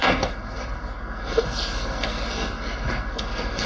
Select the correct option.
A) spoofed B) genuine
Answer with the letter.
A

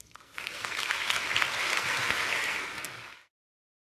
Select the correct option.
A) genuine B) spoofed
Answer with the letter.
B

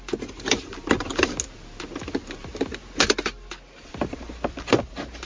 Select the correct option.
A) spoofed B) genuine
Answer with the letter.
B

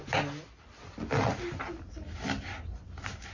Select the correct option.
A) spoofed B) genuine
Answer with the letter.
B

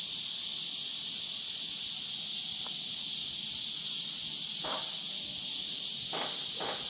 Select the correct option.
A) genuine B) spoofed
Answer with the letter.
A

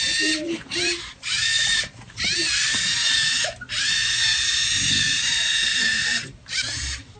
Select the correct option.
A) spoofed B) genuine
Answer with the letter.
A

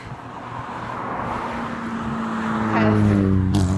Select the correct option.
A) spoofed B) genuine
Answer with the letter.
B